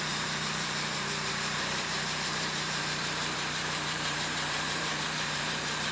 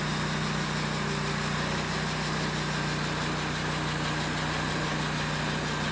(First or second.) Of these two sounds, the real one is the second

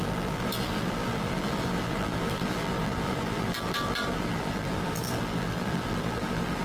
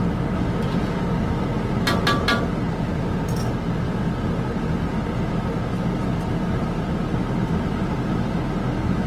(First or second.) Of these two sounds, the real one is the second